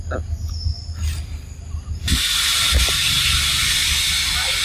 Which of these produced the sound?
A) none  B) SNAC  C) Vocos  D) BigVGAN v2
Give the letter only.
A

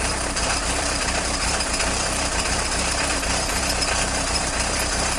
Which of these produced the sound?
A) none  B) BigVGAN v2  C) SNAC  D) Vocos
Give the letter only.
B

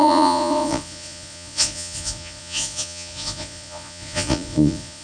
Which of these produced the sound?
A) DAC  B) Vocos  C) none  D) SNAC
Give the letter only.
B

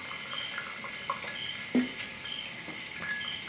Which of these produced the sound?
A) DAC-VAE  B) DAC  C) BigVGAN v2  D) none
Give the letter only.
D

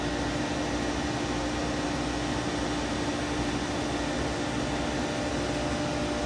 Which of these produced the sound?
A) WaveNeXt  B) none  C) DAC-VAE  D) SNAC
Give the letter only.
B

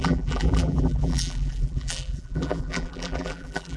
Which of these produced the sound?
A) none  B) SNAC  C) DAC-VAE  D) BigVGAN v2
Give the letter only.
D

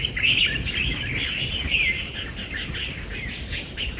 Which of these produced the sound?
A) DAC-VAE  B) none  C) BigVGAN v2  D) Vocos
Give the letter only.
B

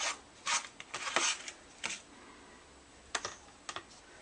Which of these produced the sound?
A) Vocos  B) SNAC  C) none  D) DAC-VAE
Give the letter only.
C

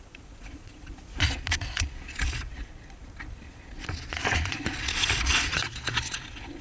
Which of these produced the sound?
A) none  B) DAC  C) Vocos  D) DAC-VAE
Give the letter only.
C